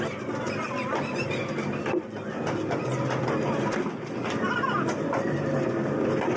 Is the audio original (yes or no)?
yes